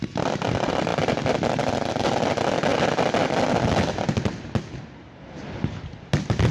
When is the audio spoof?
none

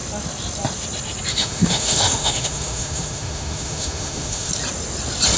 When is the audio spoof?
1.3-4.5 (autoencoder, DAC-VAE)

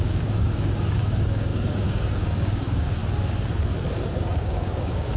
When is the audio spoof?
0.0-3.0 (codec, DAC); 4.0-5.2

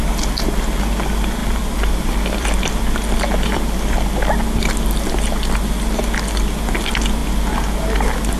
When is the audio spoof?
1.4-2.8 (vocoder, BigVGAN v2)

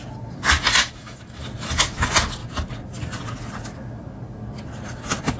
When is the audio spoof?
0.8-1.4 (autoencoder, DAC-VAE)

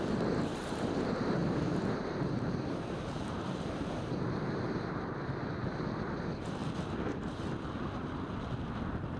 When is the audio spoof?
0.5-5.6 (vocoder, BigVGAN v2); 6.6-7.6